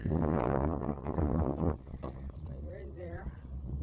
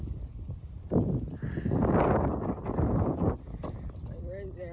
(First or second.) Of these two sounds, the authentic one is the second